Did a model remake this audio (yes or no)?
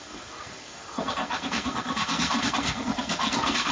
yes